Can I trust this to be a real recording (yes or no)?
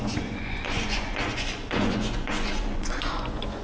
no